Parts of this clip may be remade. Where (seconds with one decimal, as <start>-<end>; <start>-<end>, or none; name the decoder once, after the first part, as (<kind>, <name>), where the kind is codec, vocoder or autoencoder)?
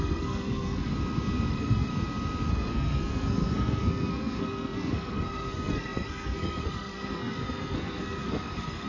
0.0-0.9 (codec, SNAC); 1.5-1.9; 2.5-8.9